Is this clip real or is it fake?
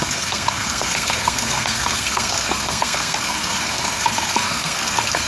fake